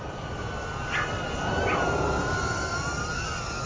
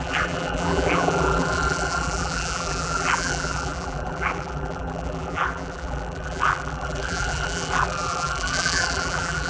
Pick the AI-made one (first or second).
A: second